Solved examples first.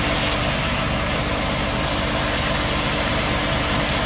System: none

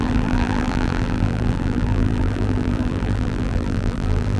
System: vocoder, BigVGAN v2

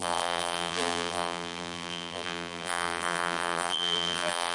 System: vocoder, BigVGAN v2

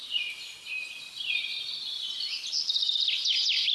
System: vocoder, BigVGAN v2